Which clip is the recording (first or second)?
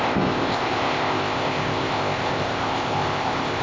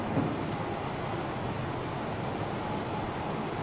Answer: second